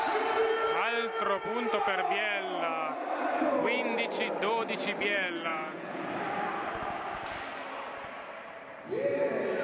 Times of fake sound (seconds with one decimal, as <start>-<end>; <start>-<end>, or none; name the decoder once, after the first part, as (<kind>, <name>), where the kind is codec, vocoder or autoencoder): 5.5-6.1 (vocoder, Vocos)